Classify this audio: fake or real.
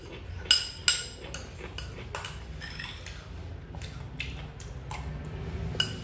real